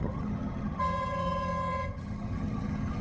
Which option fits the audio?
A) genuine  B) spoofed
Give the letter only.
B